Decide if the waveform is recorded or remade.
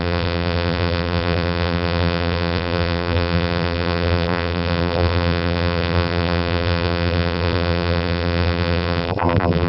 remade